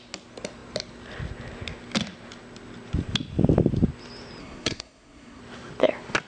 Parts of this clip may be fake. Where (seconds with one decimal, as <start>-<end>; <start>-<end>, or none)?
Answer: 4.4-5.4